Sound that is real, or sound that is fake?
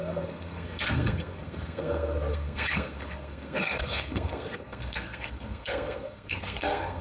fake